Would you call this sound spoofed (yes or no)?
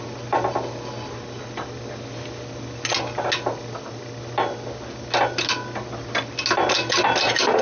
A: no